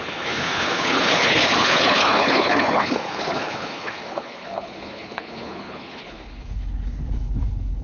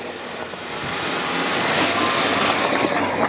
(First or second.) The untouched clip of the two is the second